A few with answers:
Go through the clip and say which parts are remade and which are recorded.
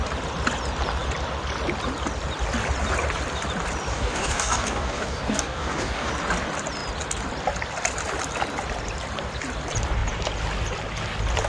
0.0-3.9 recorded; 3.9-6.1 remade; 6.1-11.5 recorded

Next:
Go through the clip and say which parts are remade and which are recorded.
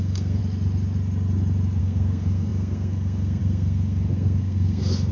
0.0-0.4 remade; 0.4-1.8 recorded; 1.8-5.1 remade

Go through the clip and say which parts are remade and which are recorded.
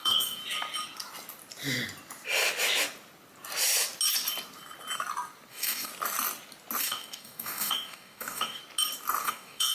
0.0-0.4 remade; 0.4-5.5 recorded; 5.5-5.9 remade; 5.9-6.8 recorded; 6.8-8.6 remade; 8.6-9.2 recorded; 9.2-9.7 remade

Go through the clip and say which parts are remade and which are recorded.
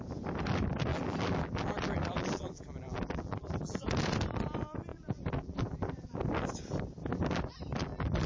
0.0-0.9 recorded; 0.9-3.8 remade; 3.8-4.9 recorded; 4.9-6.2 remade; 6.2-7.0 recorded; 7.0-8.3 remade